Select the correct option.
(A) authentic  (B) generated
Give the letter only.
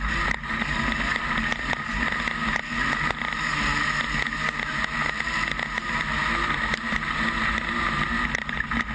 A